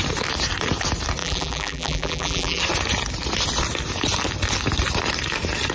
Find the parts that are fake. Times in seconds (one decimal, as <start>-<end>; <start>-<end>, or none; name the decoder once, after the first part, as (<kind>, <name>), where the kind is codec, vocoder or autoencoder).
1.2-2.6 (vocoder, BigVGAN v2)